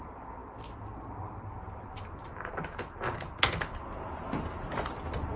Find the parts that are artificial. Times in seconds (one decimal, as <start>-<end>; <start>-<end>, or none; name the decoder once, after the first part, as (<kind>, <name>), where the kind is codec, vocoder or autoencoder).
none